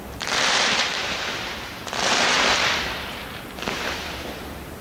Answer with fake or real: fake